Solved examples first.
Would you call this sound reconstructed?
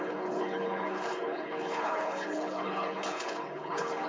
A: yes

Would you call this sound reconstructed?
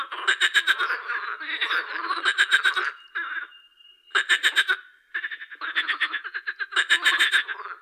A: no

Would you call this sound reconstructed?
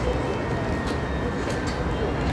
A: no